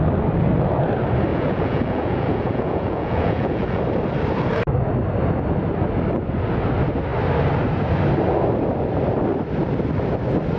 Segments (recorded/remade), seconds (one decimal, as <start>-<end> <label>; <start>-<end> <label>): 0.0-1.3 recorded; 1.3-3.8 remade; 3.8-10.6 recorded